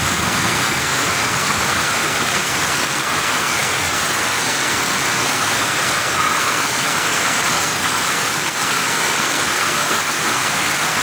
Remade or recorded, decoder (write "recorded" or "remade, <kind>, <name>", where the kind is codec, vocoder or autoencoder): remade, codec, SNAC